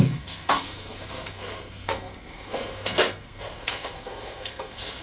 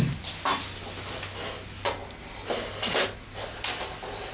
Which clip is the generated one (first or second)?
first